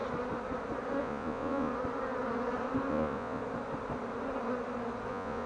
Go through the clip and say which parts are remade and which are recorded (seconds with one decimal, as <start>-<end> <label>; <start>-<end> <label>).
0.0-1.0 recorded; 1.0-1.7 remade; 1.7-2.9 recorded; 2.9-3.4 remade; 3.4-5.1 recorded; 5.1-5.5 remade